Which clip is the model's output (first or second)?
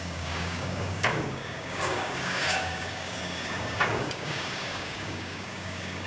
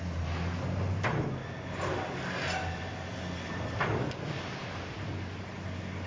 first